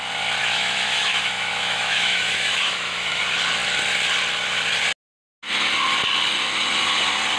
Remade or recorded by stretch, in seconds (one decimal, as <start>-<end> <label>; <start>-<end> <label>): 0.0-0.4 recorded; 0.4-3.2 remade; 3.2-7.4 recorded